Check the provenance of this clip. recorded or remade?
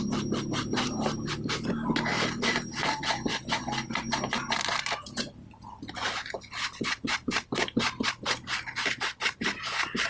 recorded